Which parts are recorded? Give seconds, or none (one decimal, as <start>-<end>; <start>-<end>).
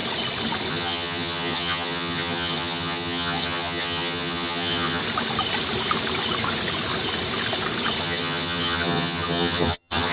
0.0-0.7; 5.0-8.0